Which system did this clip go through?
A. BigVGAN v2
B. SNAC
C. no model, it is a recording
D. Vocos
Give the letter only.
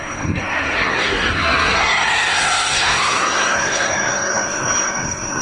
B